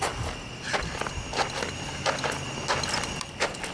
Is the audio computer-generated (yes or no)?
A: no